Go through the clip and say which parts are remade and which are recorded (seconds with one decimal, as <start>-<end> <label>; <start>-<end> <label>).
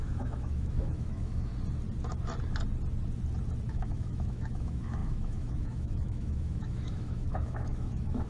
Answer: 0.0-1.5 remade; 1.5-3.7 recorded; 3.7-8.3 remade